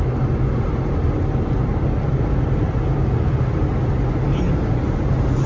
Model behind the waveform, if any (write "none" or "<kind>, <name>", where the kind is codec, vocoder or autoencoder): none